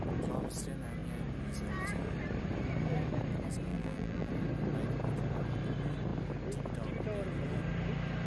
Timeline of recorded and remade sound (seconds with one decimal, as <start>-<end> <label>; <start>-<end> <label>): 0.0-3.7 recorded; 3.7-4.3 remade; 4.3-8.3 recorded